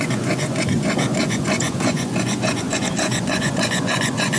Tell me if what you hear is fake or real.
fake